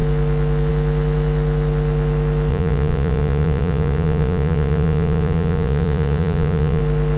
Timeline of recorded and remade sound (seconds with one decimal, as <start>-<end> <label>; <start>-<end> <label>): 0.0-2.5 recorded; 2.5-6.8 remade; 6.8-7.2 recorded